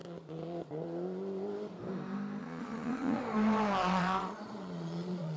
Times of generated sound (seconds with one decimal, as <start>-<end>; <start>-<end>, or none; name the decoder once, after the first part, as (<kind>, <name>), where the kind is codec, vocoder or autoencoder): 2.4-3.2 (vocoder, Vocos); 3.8-5.4